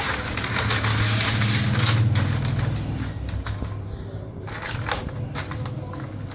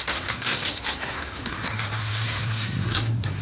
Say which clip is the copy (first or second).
second